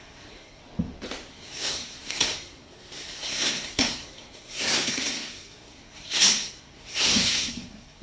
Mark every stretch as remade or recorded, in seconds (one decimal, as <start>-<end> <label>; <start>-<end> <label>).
0.0-0.6 remade; 0.6-1.3 recorded; 1.3-8.0 remade